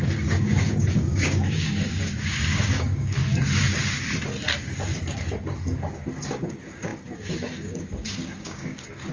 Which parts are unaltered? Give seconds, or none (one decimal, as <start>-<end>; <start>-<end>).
3.2-6.3